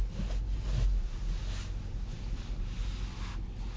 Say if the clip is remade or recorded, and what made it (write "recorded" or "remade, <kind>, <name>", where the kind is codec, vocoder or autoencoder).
recorded